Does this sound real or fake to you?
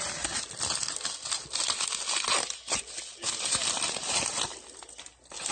real